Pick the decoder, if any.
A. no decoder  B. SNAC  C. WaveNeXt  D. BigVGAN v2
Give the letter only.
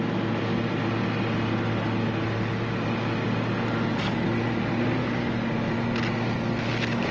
A